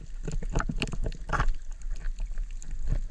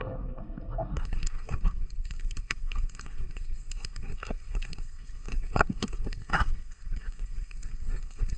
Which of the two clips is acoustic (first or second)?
first